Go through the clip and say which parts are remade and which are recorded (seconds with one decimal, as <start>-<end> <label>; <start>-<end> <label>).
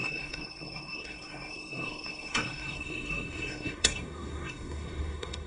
0.0-5.5 remade